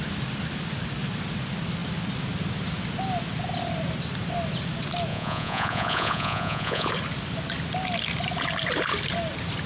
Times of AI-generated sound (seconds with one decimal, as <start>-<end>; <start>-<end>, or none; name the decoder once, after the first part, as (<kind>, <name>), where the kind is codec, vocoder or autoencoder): 5.1-6.9 (vocoder, Vocos)